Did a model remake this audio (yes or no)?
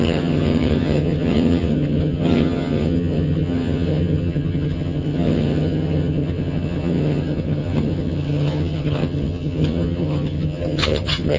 yes